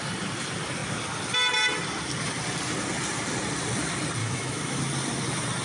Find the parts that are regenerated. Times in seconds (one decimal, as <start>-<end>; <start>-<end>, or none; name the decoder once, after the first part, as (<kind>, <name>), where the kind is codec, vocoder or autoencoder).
4.2-4.8 (autoencoder, DAC-VAE)